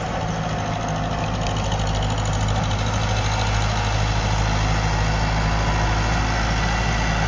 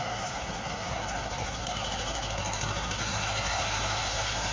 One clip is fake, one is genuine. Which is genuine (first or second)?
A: first